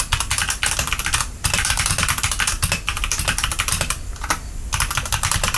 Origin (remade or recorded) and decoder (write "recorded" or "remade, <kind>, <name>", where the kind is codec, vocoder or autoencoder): recorded